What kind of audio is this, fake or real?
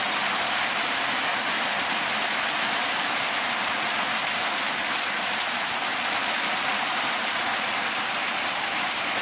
real